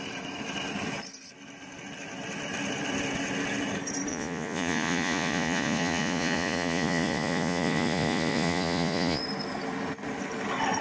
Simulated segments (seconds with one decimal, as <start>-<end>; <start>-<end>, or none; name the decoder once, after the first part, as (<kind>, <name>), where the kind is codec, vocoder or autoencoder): 4.1-9.2 (vocoder, Vocos)